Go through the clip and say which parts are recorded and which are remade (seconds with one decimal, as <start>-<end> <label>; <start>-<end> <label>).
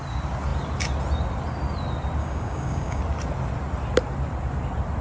0.0-2.2 recorded; 2.2-3.0 remade; 3.0-5.0 recorded